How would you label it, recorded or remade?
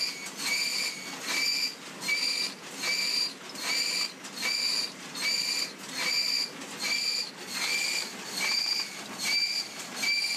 recorded